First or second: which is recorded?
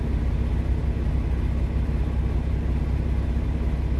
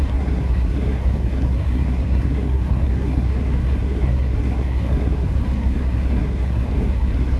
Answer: first